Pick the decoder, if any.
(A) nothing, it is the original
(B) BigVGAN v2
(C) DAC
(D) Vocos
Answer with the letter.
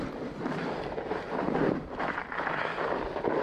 B